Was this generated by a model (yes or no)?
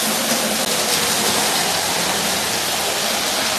no